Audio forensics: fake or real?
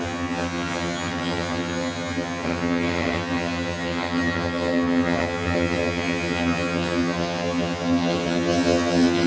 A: fake